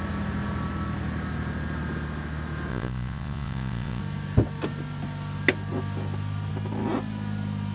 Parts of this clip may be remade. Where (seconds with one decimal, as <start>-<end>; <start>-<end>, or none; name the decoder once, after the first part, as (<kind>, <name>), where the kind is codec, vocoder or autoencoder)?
2.7-4.0 (vocoder, Vocos)